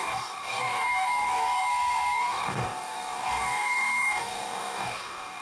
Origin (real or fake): fake